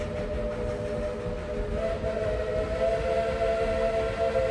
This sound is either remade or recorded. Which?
recorded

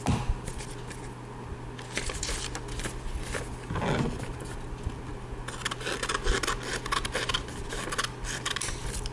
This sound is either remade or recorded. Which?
recorded